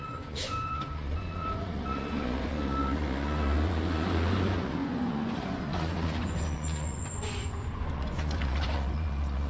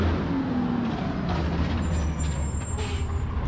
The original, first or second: second